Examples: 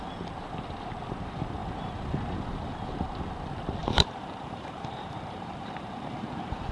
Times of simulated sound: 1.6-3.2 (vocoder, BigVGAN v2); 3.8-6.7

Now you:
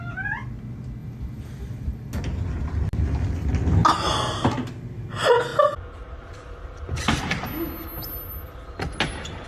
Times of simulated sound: 1.0-2.1 (vocoder, BigVGAN v2)

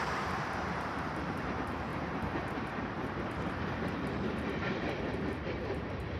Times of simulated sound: 0.0-6.2 (vocoder, BigVGAN v2)

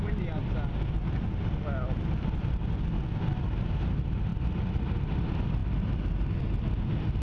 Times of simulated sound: 4.3-4.8 (vocoder, BigVGAN v2)

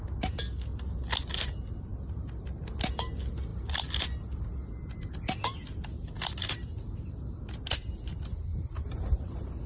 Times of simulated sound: 8.5-9.7 (vocoder, BigVGAN v2)